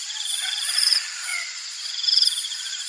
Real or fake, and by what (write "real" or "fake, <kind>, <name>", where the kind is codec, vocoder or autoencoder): fake, vocoder, Vocos